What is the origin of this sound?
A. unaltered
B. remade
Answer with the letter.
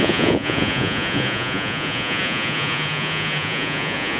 B